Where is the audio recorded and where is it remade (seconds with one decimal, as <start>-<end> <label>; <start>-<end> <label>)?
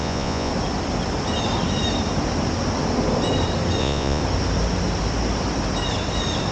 0.0-0.5 remade; 0.5-3.8 recorded; 3.8-4.2 remade; 4.2-6.5 recorded